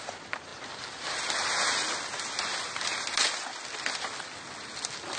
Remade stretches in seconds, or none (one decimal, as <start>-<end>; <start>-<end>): none